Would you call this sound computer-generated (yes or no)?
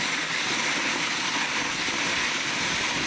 no